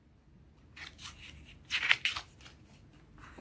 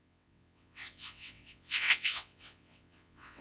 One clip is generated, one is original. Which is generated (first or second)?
second